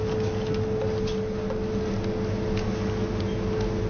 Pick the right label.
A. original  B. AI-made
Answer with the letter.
A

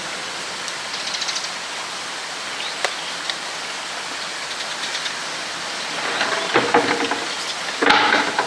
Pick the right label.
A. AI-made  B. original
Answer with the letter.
B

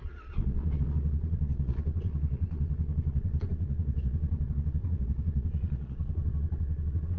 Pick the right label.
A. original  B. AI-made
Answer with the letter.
B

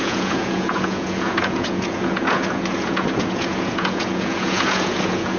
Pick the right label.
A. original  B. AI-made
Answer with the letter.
B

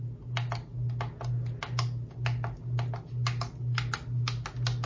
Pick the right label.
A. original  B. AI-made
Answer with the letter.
A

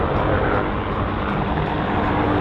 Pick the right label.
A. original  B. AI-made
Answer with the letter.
A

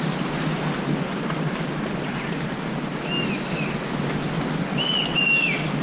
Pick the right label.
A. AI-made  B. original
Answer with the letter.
B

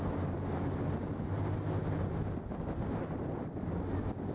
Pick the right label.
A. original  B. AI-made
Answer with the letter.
A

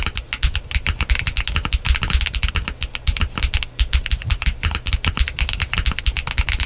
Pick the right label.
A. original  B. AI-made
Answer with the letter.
A